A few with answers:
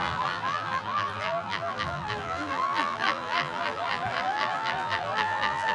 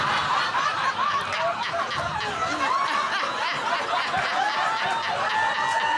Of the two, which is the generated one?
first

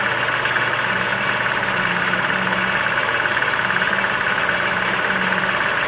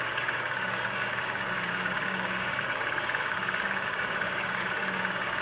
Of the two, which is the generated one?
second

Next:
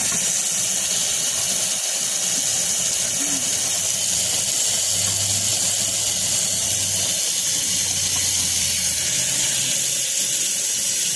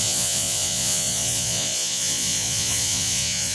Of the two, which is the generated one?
second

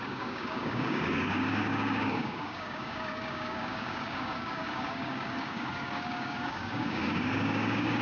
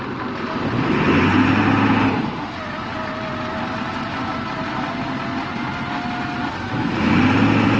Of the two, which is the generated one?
first